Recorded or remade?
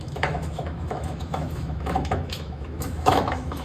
remade